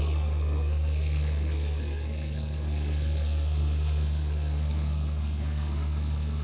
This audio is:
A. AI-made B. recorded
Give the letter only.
A